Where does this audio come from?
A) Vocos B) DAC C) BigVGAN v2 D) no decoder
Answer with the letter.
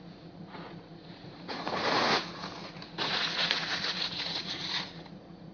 A